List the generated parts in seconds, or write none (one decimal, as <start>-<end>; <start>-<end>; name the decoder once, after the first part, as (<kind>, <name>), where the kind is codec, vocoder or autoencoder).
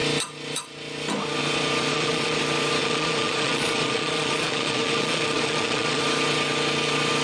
1.9-2.4 (vocoder, Vocos); 2.8-6.0